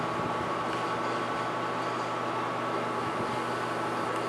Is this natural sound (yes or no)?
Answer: yes